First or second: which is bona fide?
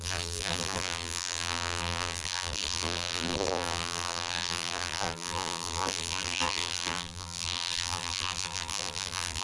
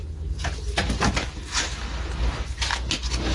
second